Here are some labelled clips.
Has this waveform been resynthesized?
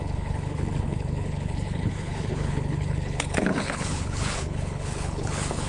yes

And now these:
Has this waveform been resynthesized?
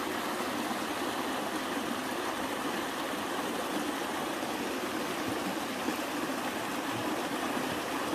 no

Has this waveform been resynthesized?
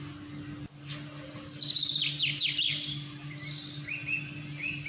no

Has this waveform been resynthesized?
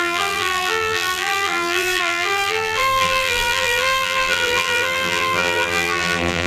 yes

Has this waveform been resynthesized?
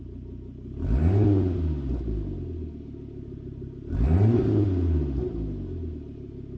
no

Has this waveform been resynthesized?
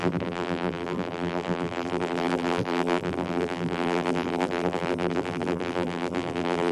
yes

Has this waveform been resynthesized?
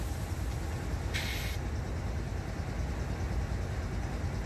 no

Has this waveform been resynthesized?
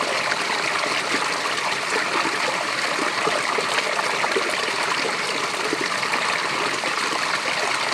no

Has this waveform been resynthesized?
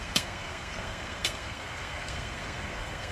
yes